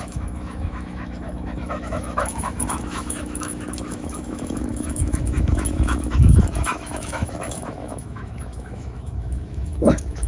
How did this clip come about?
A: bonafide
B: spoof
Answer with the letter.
B